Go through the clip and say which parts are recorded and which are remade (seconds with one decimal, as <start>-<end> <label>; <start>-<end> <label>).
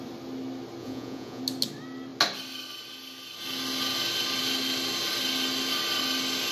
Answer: 0.0-0.8 recorded; 0.8-1.4 remade; 1.4-6.5 recorded